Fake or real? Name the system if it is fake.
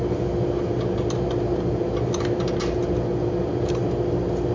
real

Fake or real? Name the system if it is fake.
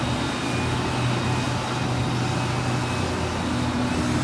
real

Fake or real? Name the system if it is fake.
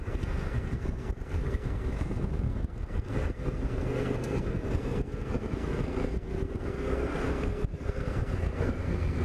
fake, codec, SNAC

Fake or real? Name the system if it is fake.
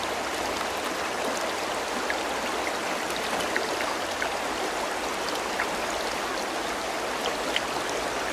real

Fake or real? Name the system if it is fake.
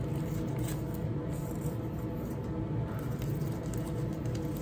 real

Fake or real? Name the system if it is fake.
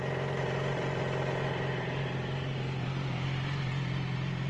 real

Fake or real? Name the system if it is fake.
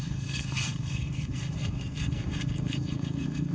fake, codec, SNAC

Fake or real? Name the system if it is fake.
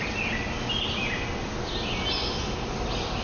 real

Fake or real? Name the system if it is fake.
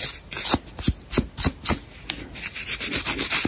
real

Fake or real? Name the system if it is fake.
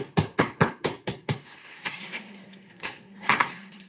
fake, codec, SNAC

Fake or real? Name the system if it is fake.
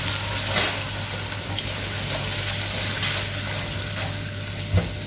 real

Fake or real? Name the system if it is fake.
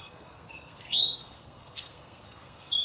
fake, codec, SNAC